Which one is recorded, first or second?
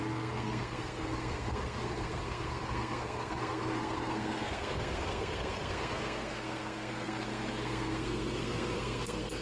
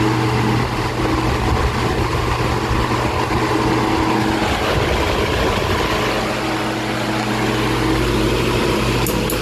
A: second